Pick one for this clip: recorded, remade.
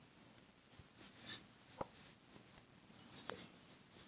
recorded